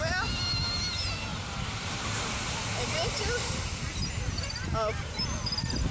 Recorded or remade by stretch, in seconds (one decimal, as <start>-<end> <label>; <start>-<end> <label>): 0.0-1.3 recorded; 1.3-2.8 remade; 2.8-5.9 recorded